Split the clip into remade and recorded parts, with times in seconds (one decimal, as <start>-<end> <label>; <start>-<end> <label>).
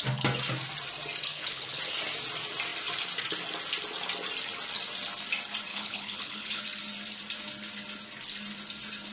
0.0-1.3 recorded; 1.3-1.8 remade; 1.8-5.7 recorded; 5.7-6.6 remade; 6.6-9.1 recorded